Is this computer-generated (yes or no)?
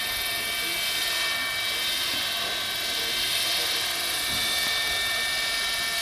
no